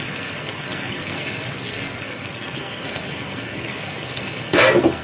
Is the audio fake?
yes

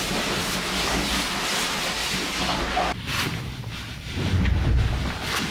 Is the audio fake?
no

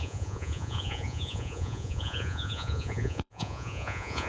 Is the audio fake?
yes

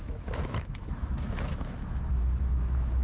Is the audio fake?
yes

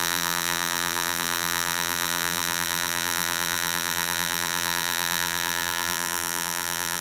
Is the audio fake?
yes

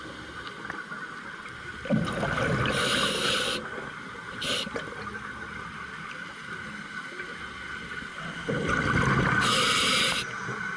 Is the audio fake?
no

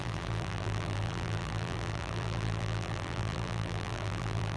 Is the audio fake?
yes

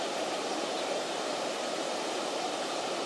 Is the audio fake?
yes